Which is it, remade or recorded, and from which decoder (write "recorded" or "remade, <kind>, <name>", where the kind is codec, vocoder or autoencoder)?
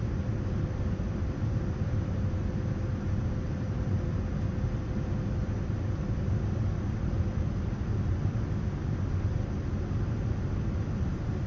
recorded